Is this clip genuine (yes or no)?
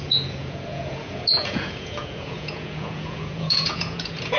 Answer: no